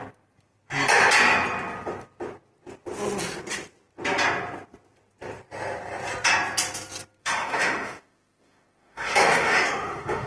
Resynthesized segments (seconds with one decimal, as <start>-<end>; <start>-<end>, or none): 7.2-10.3